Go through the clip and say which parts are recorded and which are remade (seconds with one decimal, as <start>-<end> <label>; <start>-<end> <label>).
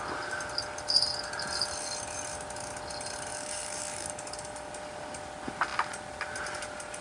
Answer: 0.0-3.3 recorded; 3.3-4.7 remade; 4.7-7.0 recorded